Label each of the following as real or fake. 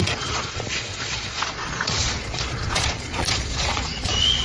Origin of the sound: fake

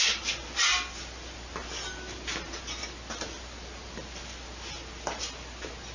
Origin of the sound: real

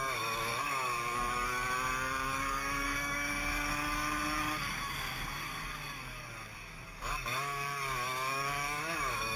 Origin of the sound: fake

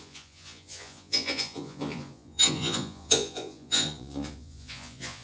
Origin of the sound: fake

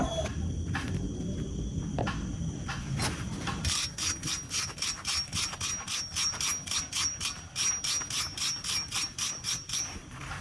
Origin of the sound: real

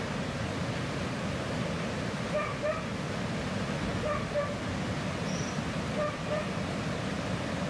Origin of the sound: real